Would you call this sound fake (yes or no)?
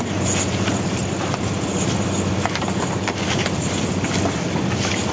no